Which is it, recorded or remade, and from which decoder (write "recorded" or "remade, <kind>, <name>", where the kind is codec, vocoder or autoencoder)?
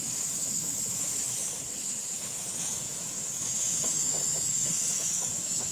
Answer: remade, autoencoder, DAC-VAE